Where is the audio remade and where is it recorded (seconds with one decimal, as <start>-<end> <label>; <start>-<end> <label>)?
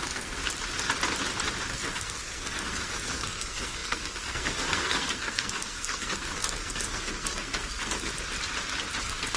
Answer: 0.0-0.4 remade; 0.4-1.7 recorded; 1.7-8.1 remade; 8.1-9.0 recorded; 9.0-9.4 remade